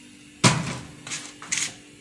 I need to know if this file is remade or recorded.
recorded